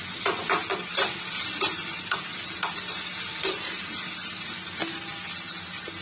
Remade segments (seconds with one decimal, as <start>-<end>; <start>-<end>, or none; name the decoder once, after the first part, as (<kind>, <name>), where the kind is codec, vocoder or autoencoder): 3.3-4.4 (vocoder, BigVGAN v2)